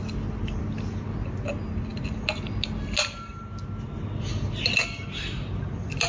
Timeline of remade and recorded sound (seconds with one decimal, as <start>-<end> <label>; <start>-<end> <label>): 0.0-6.1 recorded